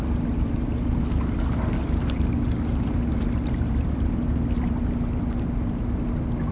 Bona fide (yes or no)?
yes